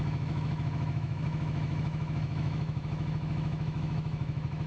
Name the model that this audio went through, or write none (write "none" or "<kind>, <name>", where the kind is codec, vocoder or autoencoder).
autoencoder, DAC-VAE